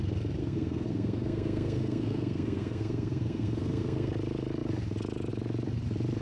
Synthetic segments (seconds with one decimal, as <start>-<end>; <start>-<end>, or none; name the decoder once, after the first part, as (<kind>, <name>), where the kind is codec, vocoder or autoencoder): 0.4-4.1 (codec, SNAC)

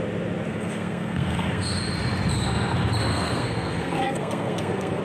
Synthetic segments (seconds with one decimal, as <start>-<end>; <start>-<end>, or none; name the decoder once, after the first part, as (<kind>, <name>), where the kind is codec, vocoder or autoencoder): 0.5-1.8 (codec, SNAC); 3.1-5.0

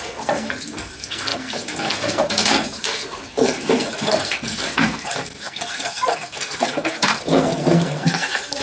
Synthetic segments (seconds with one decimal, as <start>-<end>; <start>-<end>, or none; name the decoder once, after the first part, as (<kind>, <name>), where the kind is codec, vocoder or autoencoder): 0.0-8.6 (codec, SNAC)

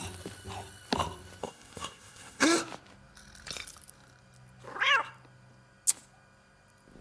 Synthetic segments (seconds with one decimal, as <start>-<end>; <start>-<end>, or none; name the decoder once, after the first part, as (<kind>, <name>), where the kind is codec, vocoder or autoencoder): 1.4-2.6 (codec, SNAC)

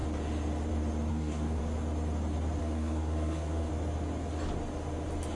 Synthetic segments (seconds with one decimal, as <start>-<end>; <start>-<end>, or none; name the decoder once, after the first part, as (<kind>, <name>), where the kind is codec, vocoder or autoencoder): 1.1-1.6 (codec, SNAC); 2.6-3.7

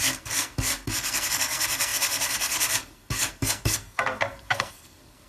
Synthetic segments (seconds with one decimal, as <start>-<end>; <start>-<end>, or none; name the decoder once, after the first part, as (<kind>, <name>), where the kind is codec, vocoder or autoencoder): 0.0-5.3 (codec, SNAC)